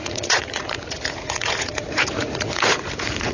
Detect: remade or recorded remade